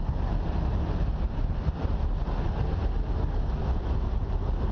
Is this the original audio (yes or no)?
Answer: yes